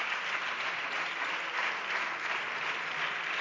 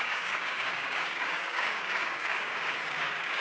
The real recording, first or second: first